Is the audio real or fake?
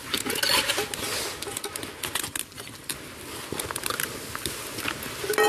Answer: real